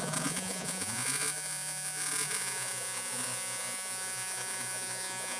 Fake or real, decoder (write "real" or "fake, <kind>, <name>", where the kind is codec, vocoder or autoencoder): fake, vocoder, Vocos